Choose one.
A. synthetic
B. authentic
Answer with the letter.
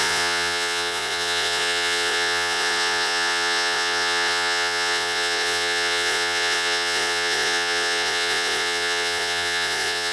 A